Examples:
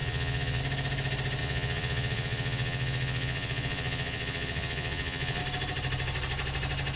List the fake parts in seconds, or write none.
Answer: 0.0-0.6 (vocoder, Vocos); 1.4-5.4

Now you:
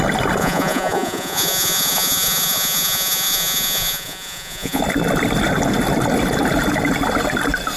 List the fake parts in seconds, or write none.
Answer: 0.4-4.8 (vocoder, Vocos)

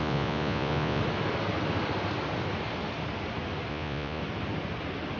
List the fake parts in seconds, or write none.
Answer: 0.0-1.0 (vocoder, Vocos); 3.7-4.2

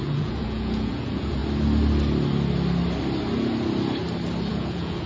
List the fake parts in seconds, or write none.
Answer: 0.0-1.4 (vocoder, Vocos); 4.5-5.1

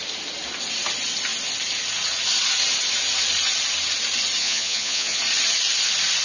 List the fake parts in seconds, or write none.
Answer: 4.4-5.2 (vocoder, Vocos)

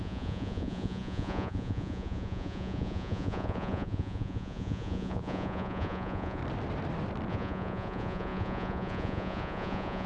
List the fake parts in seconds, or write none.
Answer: 0.0-6.4 (vocoder, Vocos); 7.3-10.1

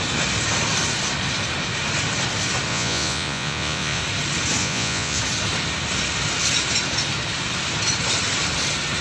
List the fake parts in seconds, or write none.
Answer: 2.7-4.0 (vocoder, Vocos); 4.6-5.2